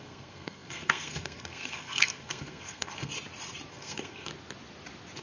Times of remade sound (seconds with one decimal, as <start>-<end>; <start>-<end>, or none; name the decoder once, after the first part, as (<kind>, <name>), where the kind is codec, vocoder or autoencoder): 0.0-3.1 (codec, SNAC); 3.7-4.3